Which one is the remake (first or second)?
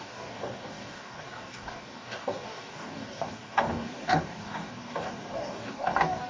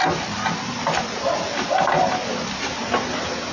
first